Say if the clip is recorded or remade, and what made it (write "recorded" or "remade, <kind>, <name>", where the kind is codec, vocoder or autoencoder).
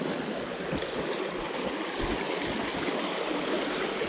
recorded